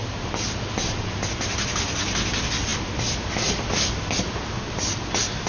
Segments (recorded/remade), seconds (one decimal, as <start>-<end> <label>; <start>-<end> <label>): 0.0-5.5 recorded